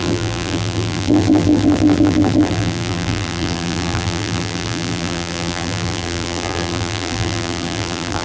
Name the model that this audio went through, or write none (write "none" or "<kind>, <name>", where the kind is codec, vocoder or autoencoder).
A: vocoder, BigVGAN v2